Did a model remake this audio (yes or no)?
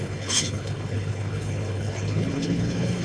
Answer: yes